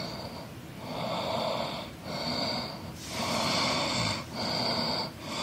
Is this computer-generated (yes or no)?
yes